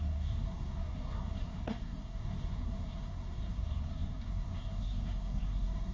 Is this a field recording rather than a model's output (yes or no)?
no